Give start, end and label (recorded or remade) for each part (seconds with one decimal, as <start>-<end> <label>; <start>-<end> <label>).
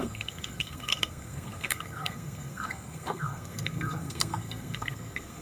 0.0-5.4 remade